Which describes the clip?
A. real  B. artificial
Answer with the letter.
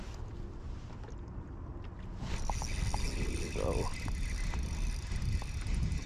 A